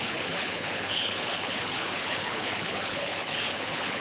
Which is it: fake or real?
fake